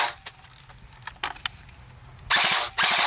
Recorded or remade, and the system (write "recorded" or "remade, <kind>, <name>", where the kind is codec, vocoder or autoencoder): recorded